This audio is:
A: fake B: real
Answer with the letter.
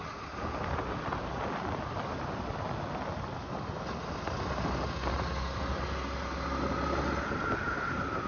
B